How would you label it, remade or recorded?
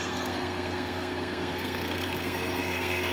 remade